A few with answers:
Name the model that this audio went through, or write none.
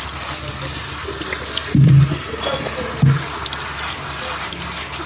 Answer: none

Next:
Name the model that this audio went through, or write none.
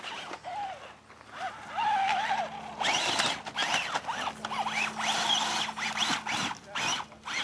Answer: none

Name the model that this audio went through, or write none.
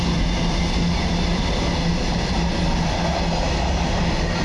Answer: none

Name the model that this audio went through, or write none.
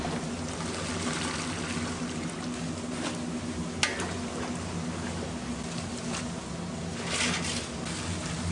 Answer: none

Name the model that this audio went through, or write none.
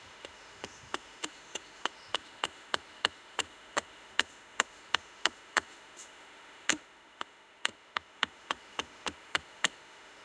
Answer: autoencoder, DAC-VAE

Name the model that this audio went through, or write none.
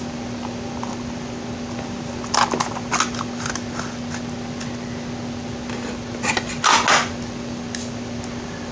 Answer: none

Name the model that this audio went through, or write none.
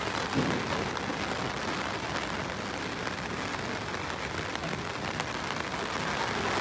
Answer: none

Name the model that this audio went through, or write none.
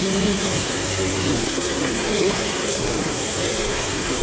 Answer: codec, SNAC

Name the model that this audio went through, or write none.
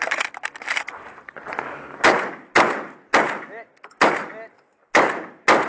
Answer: none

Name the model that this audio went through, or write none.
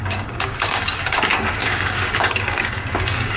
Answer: codec, DAC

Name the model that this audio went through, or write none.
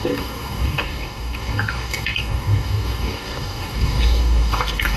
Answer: codec, DAC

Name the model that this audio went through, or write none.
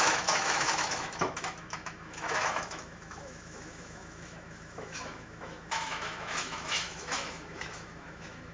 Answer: autoencoder, DAC-VAE